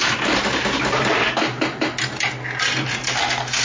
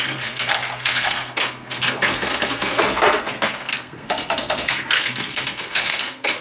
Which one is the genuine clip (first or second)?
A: first